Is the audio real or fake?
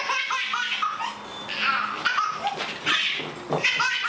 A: real